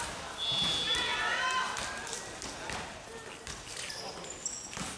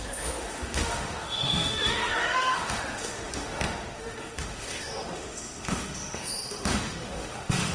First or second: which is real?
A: first